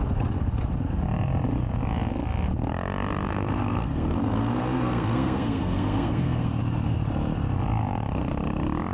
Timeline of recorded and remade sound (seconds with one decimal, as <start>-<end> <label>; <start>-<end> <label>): 0.0-3.3 recorded; 3.3-6.6 remade; 6.6-8.9 recorded